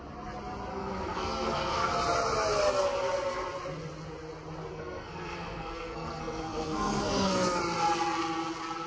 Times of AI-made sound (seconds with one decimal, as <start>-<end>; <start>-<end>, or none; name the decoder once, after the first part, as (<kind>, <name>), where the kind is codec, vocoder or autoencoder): 0.7-1.9 (codec, SNAC); 4.7-7.6